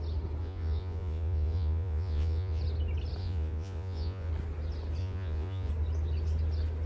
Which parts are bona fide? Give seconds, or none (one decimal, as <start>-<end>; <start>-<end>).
0.0-0.4; 2.6-3.2; 4.3-5.0; 5.7-6.9